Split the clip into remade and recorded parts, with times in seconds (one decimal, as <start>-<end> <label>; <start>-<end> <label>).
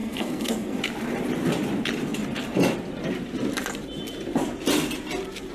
0.0-0.8 remade; 0.8-5.5 recorded